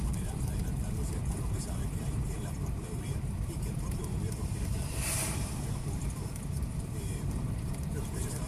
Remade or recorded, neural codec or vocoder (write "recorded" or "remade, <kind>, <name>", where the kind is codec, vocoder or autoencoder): remade, vocoder, BigVGAN v2